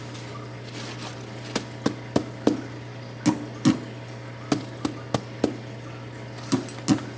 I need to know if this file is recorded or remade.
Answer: recorded